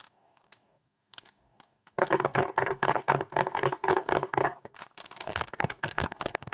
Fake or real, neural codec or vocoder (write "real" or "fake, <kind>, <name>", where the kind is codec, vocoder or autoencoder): fake, codec, DAC